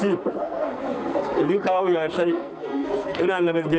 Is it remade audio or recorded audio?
remade